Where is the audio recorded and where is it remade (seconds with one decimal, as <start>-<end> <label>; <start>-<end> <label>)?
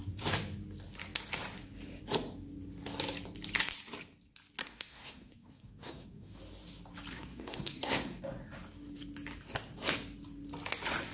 0.0-4.6 recorded; 4.6-6.4 remade; 6.4-7.1 recorded; 7.1-8.2 remade; 8.2-11.1 recorded